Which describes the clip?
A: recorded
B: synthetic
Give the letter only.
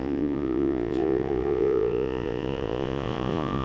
B